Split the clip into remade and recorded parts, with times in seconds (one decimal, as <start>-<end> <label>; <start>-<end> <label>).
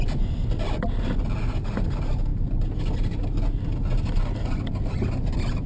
0.0-5.7 recorded